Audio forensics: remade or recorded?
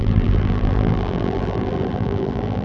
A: remade